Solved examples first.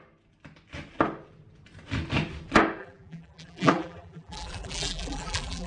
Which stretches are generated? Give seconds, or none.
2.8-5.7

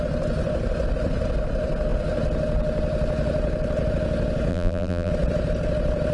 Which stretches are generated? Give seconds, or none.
4.5-5.1

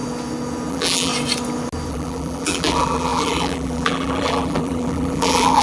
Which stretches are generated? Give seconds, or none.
0.7-1.1; 1.9-5.6

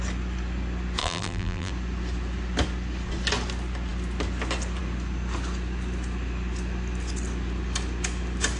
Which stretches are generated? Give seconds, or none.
1.0-1.7

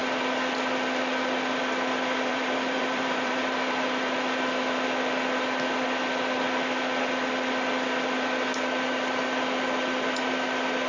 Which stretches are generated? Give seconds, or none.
2.3-3.7

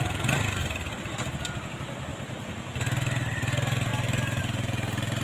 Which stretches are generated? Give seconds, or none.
none

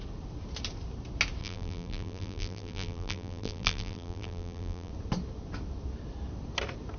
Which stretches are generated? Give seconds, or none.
1.4-4.9

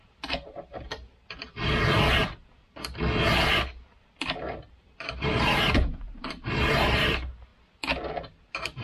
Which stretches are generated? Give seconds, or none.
0.0-1.1; 4.7-7.5; 8.2-8.8